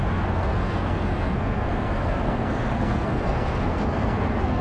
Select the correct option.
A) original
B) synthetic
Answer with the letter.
B